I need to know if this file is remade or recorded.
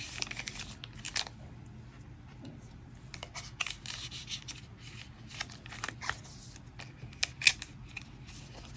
recorded